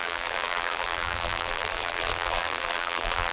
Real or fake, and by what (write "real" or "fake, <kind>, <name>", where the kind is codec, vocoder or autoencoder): fake, vocoder, BigVGAN v2